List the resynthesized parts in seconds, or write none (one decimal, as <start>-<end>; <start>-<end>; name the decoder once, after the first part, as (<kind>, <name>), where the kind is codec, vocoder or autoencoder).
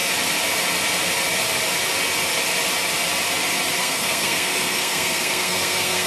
3.8-6.1 (codec, SNAC)